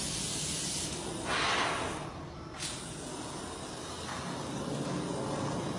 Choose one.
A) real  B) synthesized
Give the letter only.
A